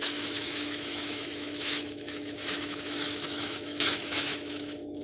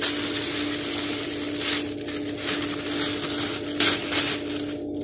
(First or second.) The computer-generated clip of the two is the first